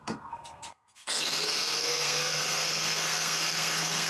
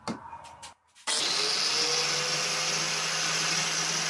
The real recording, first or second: second